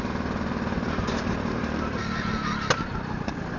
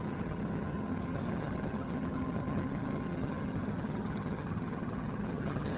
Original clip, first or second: first